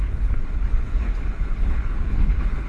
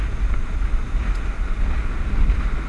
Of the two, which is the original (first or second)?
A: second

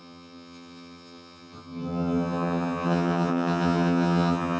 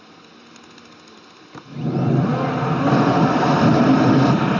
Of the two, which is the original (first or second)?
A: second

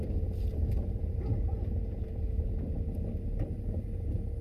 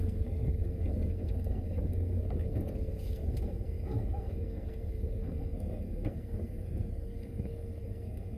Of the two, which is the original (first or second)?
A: first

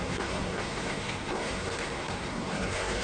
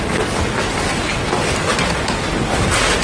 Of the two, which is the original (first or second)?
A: second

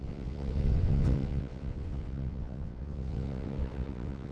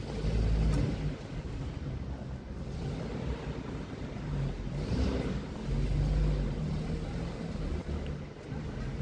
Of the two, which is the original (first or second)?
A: second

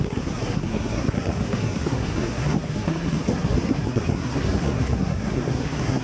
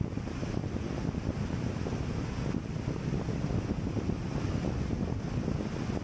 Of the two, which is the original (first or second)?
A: second